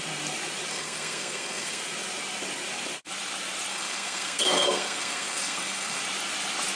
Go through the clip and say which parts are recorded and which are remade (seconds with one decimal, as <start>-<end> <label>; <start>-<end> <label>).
0.0-0.7 recorded; 0.7-1.8 remade; 1.8-3.7 recorded; 3.7-6.0 remade; 6.0-6.8 recorded